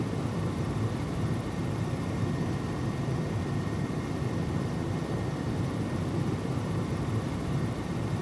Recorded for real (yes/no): no